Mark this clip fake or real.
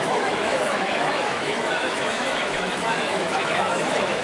fake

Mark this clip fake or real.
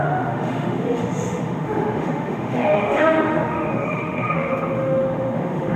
fake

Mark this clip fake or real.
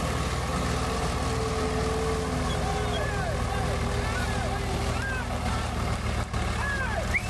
real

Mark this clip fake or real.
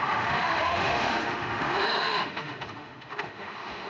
fake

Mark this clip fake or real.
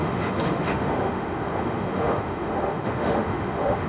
fake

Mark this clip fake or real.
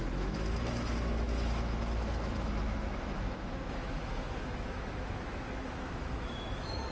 fake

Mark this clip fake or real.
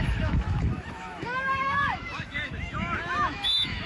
fake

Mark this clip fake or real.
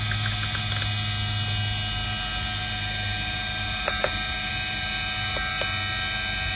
real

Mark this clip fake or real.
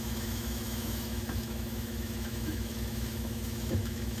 fake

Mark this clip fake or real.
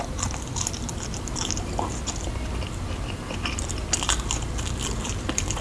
real